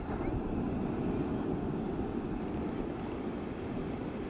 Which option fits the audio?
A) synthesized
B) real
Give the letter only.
B